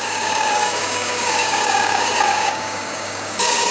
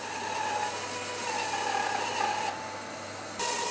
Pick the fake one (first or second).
first